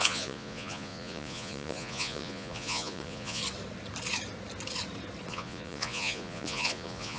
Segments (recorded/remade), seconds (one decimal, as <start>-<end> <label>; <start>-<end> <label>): 0.0-3.4 remade; 3.4-5.3 recorded; 5.3-7.2 remade